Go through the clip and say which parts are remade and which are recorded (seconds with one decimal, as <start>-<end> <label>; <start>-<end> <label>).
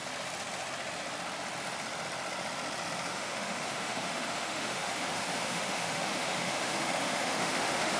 0.0-3.1 recorded; 3.1-8.0 remade